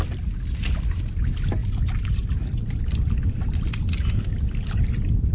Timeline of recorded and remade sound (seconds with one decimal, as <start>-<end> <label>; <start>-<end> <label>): 0.0-5.3 recorded